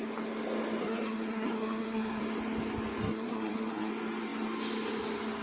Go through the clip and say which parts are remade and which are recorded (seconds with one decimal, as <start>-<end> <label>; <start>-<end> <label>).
0.0-0.8 recorded; 0.8-2.2 remade; 2.2-3.0 recorded; 3.0-3.9 remade; 3.9-5.4 recorded